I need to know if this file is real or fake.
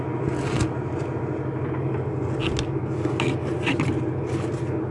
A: real